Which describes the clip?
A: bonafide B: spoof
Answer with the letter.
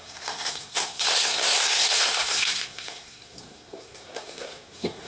B